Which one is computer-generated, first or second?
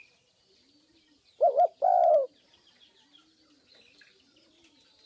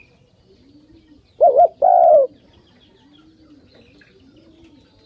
first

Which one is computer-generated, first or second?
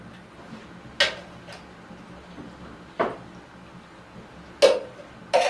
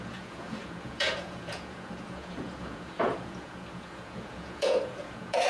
second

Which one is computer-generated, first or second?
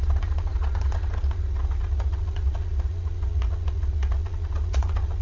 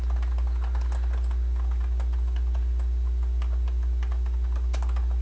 first